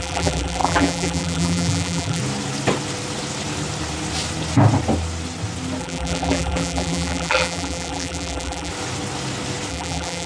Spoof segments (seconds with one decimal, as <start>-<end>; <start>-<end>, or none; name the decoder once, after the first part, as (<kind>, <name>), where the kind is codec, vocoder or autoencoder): 0.0-2.2 (vocoder, BigVGAN v2); 5.8-8.7; 9.7-10.3